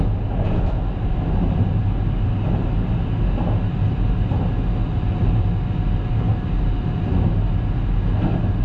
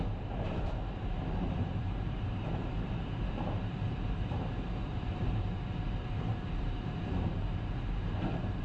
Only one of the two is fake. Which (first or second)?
second